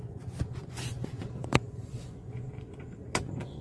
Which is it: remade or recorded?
remade